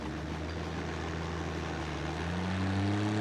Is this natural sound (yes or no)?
yes